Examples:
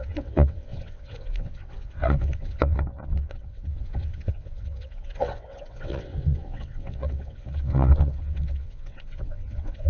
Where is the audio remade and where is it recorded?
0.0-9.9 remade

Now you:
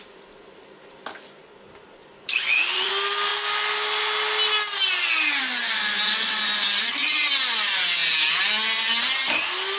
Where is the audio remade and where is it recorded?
0.0-2.0 recorded; 2.0-2.9 remade; 2.9-9.8 recorded

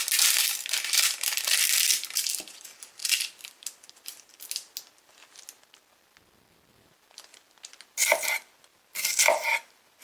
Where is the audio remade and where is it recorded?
0.0-3.0 recorded; 3.0-4.3 remade; 4.3-8.7 recorded; 8.7-10.0 remade

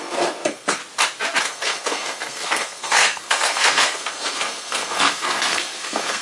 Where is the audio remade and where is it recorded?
0.0-0.8 remade; 0.8-1.4 recorded; 1.4-6.2 remade

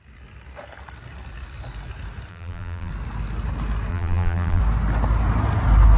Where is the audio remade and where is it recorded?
0.0-2.3 recorded; 2.3-2.9 remade; 2.9-3.9 recorded; 3.9-4.6 remade; 4.6-6.0 recorded

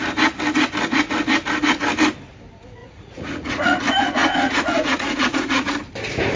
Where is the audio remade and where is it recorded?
0.0-2.8 recorded; 2.8-3.8 remade; 3.8-4.2 recorded; 4.2-5.7 remade; 5.7-6.4 recorded

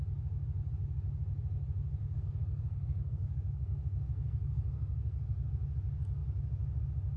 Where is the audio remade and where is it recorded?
0.0-2.0 recorded; 2.0-5.6 remade; 5.6-7.2 recorded

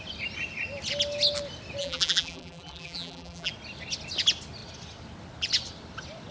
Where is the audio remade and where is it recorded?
0.0-1.8 recorded; 1.8-3.5 remade; 3.5-6.3 recorded